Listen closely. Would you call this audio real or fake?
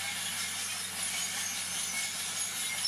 real